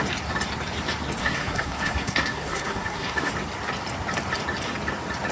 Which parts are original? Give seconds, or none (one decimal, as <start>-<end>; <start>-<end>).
0.0-1.2; 3.3-5.3

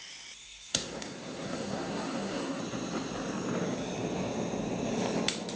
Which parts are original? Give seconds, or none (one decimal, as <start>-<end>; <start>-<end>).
0.0-0.4; 2.6-5.6